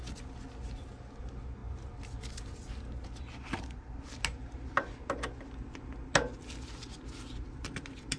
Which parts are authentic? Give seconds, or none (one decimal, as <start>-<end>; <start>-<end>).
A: 0.0-8.2